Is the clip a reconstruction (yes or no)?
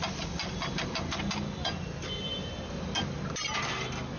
no